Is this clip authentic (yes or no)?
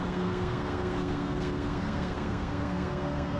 no